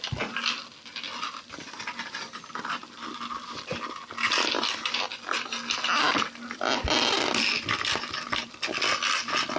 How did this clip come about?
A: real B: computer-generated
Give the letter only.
A